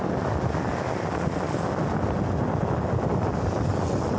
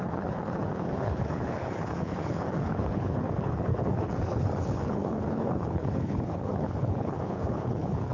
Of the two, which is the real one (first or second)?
first